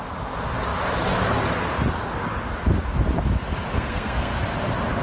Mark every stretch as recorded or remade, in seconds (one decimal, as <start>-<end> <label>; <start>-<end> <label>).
0.0-3.7 recorded; 3.7-4.4 remade; 4.4-5.0 recorded